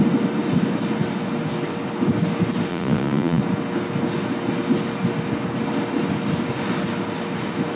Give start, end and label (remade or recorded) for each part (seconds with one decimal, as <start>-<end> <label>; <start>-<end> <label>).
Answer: 0.0-2.7 recorded; 2.7-3.4 remade; 3.4-7.8 recorded